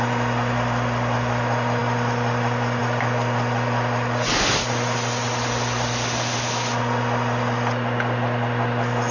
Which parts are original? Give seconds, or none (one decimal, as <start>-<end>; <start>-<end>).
0.0-9.1